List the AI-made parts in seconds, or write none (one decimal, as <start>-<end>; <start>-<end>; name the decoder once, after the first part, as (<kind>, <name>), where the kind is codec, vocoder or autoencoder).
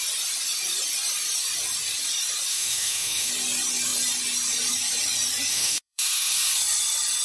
2.5-3.3 (autoencoder, DAC-VAE); 5.5-6.3